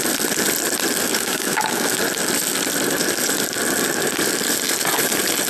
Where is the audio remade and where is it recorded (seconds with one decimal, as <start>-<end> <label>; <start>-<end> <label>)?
0.0-1.0 recorded; 1.0-2.0 remade; 2.0-5.5 recorded